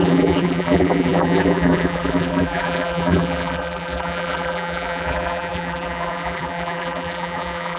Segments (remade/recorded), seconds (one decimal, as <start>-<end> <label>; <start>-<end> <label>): 0.0-7.8 remade